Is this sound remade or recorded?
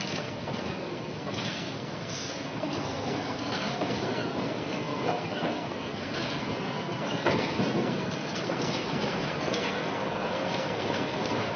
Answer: remade